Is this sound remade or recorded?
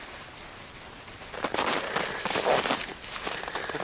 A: recorded